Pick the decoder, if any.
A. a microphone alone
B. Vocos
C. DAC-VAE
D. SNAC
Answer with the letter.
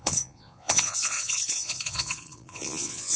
B